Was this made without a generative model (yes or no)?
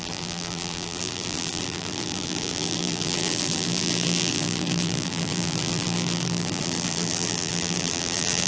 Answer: no